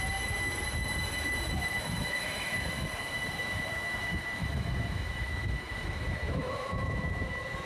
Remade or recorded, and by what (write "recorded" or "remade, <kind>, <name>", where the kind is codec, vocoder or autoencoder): remade, autoencoder, DAC-VAE